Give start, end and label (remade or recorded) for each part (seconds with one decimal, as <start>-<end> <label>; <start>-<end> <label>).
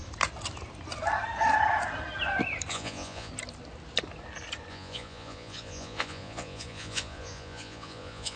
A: 0.0-2.7 recorded; 2.7-3.3 remade; 3.3-4.7 recorded; 4.7-8.4 remade